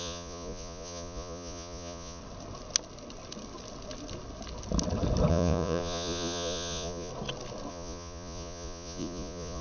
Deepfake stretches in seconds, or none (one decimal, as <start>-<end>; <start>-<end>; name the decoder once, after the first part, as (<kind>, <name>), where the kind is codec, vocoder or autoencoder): 0.0-2.2 (vocoder, Vocos); 5.3-7.1; 7.7-9.6